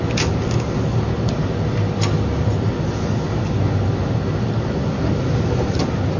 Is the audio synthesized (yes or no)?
no